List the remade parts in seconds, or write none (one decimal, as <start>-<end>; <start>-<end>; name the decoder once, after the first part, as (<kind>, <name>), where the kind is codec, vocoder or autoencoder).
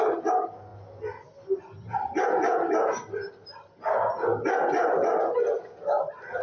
none